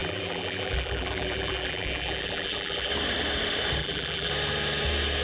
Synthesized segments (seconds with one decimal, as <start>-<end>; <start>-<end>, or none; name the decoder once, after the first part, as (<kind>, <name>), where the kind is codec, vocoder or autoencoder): 0.0-2.9 (vocoder, BigVGAN v2); 3.8-4.3